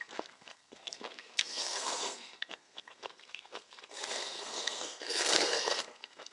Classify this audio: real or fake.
fake